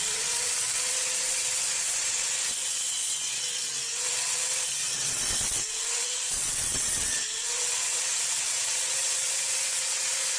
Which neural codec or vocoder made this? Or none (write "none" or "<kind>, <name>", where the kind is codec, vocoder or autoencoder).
vocoder, WaveNeXt